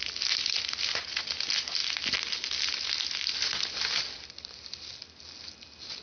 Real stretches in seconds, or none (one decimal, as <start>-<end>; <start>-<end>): 0.0-6.0